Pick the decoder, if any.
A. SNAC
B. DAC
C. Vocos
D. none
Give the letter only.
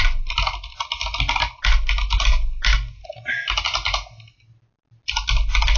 D